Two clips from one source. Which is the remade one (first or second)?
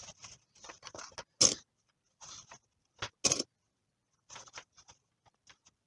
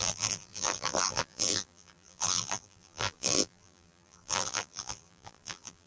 second